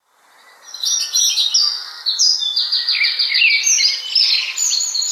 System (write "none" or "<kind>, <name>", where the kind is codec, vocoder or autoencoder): none